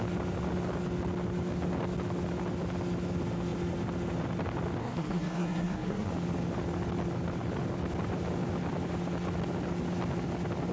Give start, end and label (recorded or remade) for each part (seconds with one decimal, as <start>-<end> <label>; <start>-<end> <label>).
0.0-4.8 recorded; 4.8-6.1 remade; 6.1-10.7 recorded

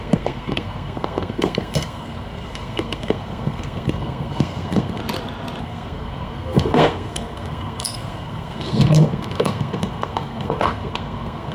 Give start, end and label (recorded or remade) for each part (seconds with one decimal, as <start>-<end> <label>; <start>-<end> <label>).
0.0-5.0 remade; 5.0-5.6 recorded; 5.6-11.5 remade

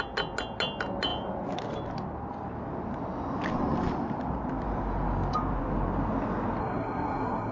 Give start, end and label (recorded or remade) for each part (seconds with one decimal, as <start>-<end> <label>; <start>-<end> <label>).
0.0-6.6 recorded; 6.6-7.5 remade

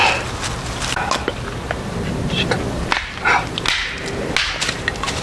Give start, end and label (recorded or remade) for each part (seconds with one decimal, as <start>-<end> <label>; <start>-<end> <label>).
0.0-5.2 recorded

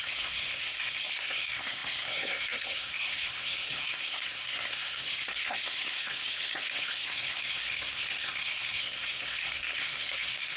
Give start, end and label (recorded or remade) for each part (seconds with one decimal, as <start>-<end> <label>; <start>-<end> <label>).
0.0-10.6 remade

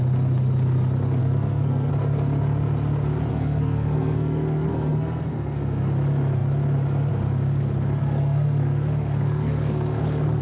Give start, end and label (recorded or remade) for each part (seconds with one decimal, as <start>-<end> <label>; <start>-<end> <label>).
0.0-1.2 recorded; 1.2-1.9 remade; 1.9-3.3 recorded; 3.3-5.9 remade; 5.9-8.0 recorded; 8.0-10.4 remade

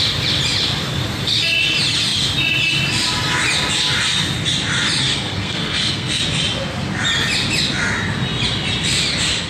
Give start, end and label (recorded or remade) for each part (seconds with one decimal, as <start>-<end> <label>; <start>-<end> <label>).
0.0-5.1 recorded; 5.1-6.2 remade; 6.2-9.5 recorded